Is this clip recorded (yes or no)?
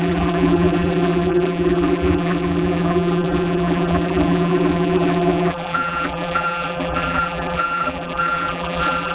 no